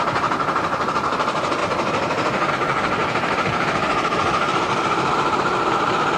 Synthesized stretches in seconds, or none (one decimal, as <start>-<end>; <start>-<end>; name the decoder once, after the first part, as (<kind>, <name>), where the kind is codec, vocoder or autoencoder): 0.0-1.6 (vocoder, BigVGAN v2); 2.5-6.2